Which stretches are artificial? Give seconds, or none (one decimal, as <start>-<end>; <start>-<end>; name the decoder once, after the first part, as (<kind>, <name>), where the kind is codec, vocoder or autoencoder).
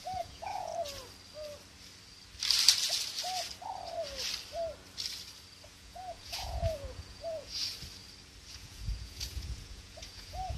0.0-0.7 (vocoder, Vocos); 5.7-7.6; 8.5-10.6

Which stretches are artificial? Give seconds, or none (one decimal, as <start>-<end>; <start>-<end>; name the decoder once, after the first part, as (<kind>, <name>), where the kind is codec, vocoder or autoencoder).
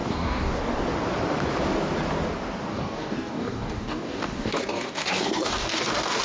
0.0-0.6 (codec, DAC); 2.7-6.2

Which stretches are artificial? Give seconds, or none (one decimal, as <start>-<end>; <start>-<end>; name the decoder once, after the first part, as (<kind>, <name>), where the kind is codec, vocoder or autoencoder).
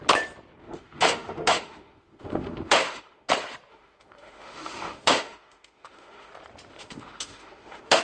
0.6-3.3 (autoencoder, DAC-VAE); 3.7-6.3; 6.7-8.0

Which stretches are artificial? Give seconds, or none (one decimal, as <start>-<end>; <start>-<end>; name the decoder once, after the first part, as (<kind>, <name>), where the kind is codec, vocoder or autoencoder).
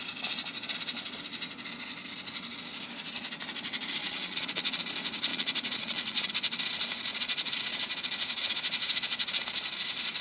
4.0-4.8 (vocoder, Vocos); 5.3-6.3; 7.1-8.0; 8.4-9.3